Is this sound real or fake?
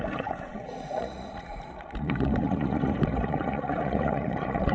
fake